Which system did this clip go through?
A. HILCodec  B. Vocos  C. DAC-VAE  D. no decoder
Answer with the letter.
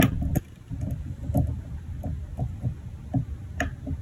D